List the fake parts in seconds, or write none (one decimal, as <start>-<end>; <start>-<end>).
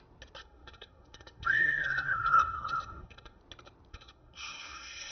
0.4-3.4; 3.9-5.1